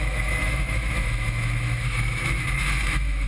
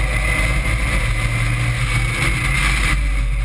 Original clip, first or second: second